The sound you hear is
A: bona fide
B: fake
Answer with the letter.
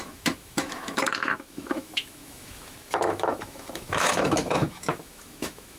B